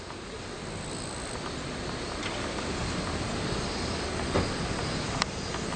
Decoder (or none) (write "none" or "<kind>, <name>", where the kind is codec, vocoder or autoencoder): none